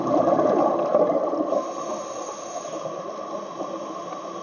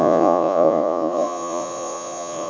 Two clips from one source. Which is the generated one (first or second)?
second